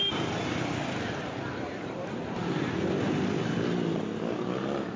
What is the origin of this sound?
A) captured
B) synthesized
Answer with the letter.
A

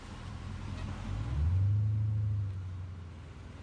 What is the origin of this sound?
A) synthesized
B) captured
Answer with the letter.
B